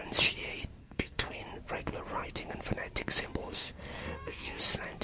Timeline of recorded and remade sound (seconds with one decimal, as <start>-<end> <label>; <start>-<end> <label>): 0.0-0.8 recorded; 0.8-1.4 remade; 1.4-3.4 recorded; 3.4-4.6 remade; 4.6-5.0 recorded